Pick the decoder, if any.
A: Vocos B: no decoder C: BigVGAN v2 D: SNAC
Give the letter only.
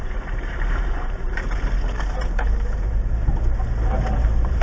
C